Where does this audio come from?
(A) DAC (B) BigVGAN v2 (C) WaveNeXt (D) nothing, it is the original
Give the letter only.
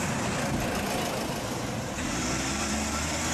B